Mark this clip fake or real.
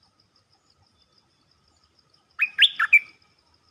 real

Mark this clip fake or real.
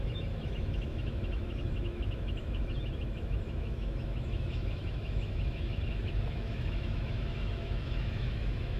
fake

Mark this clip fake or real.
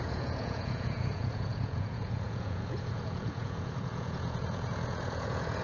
fake